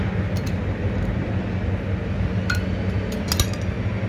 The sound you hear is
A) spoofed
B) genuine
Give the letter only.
B